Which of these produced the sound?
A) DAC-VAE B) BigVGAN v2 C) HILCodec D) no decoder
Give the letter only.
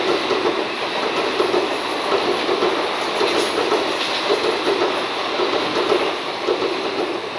D